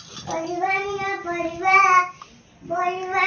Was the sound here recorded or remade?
recorded